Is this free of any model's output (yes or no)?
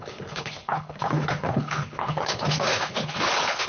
no